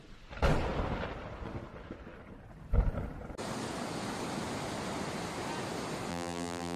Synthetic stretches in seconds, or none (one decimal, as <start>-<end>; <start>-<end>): 6.1-6.8